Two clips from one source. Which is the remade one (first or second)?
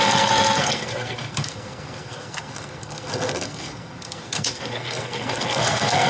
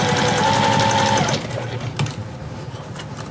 first